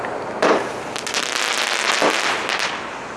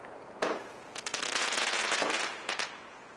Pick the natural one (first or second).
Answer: first